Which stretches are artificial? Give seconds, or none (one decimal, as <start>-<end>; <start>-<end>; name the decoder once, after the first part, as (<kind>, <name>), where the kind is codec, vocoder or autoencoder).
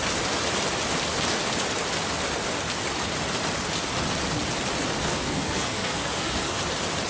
5.0-6.6 (codec, SNAC)